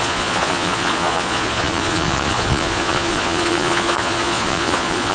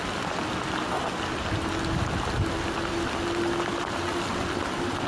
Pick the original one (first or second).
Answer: second